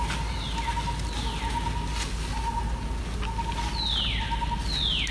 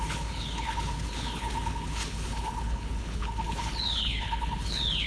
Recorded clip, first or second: first